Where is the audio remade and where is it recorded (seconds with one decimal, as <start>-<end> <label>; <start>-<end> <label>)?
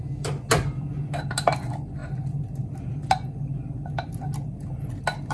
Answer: 0.0-5.3 recorded